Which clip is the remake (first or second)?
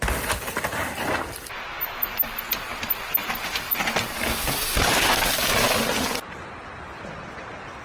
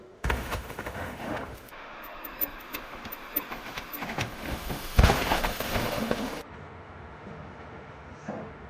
second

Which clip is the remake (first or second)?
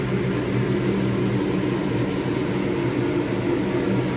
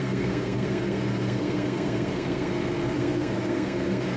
second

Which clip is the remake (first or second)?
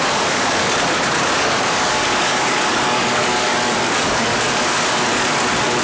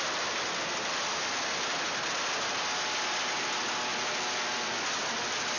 first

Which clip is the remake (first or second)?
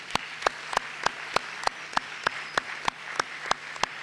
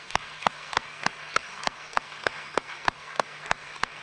second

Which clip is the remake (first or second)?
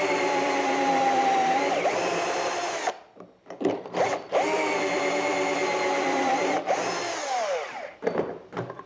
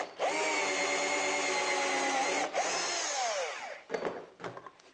first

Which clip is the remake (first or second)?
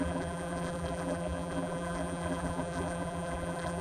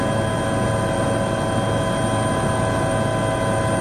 first